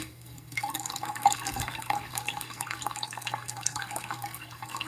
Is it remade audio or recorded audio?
remade